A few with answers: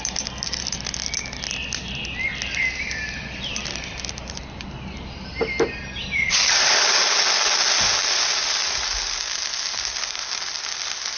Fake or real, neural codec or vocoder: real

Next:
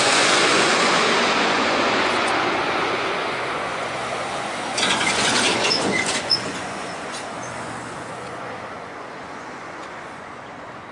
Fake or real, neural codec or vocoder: fake, vocoder, Vocos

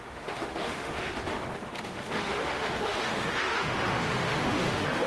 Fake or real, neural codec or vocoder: fake, autoencoder, DAC-VAE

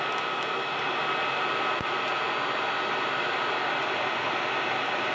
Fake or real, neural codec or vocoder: real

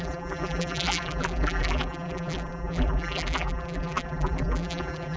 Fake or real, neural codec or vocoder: fake, vocoder, BigVGAN v2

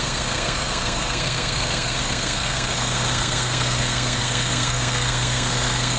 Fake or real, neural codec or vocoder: fake, codec, SNAC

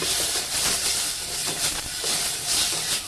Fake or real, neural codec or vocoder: real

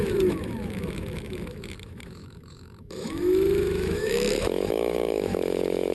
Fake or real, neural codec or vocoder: fake, autoencoder, DAC-VAE